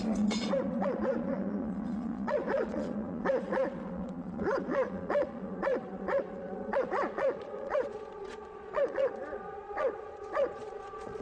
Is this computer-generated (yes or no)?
yes